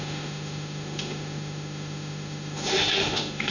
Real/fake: fake